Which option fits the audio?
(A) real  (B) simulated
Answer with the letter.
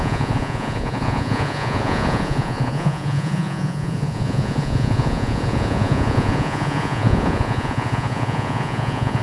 B